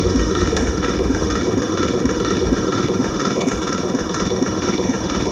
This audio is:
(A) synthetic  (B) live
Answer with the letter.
A